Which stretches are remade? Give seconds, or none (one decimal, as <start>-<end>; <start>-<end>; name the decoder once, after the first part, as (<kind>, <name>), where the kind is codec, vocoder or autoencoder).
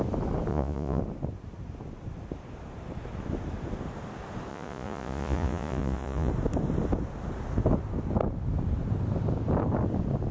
0.5-1.0 (vocoder, Vocos); 4.5-6.3